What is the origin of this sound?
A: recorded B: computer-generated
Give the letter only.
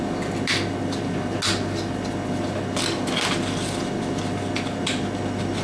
A